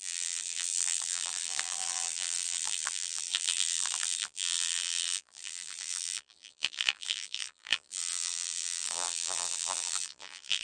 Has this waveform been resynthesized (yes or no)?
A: yes